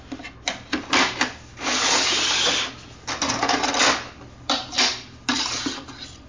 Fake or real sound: real